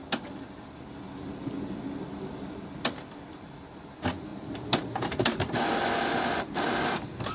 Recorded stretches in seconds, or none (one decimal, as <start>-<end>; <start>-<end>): 0.0-7.3